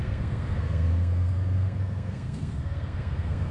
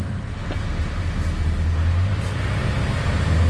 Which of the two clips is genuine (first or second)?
second